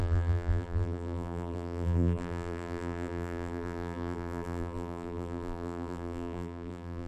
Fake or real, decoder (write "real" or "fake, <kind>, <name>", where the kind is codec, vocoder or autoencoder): fake, vocoder, BigVGAN v2